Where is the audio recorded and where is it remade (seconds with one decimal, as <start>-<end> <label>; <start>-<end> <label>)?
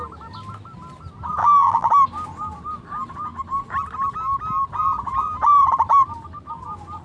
0.0-1.4 recorded; 1.4-1.9 remade; 1.9-7.0 recorded